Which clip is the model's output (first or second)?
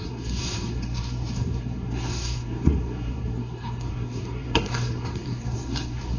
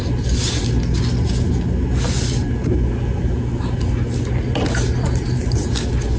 first